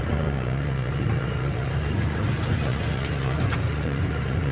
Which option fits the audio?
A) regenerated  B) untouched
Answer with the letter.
A